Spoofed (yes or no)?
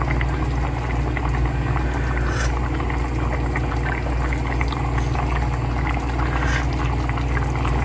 no